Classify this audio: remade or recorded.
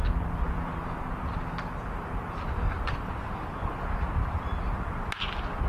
recorded